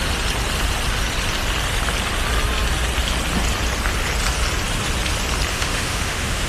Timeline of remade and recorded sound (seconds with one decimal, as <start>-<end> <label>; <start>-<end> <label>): 0.0-5.5 recorded; 5.5-6.5 remade